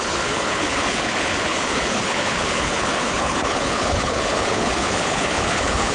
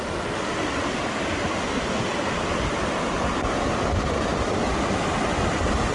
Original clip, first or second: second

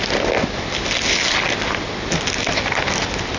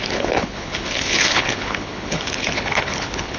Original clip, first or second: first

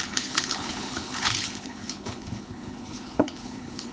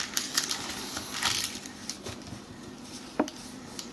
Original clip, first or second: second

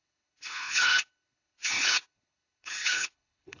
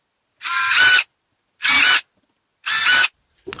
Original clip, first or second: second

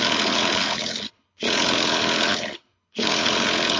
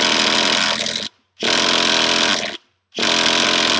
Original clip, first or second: second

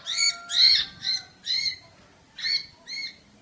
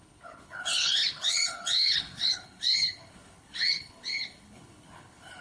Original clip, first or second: first